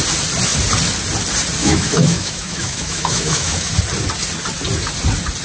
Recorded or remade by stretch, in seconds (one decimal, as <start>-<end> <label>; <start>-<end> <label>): 0.0-1.6 recorded; 1.6-3.7 remade; 3.7-5.4 recorded